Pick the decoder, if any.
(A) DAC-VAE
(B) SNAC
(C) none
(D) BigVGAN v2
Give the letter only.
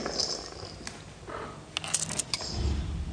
C